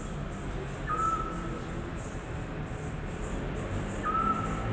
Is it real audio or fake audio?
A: real